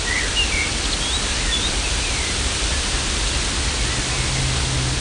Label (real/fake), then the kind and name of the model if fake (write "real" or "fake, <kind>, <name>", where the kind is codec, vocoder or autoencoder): real